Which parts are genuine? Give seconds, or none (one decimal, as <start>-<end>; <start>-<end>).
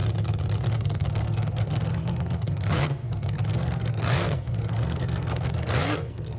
0.0-0.7